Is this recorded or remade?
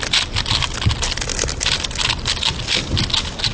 recorded